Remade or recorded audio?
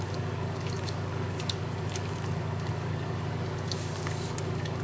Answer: remade